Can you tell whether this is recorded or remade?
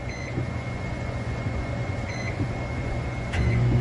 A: remade